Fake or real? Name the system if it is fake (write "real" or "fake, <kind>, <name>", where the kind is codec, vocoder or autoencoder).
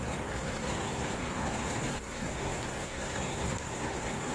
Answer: fake, codec, SNAC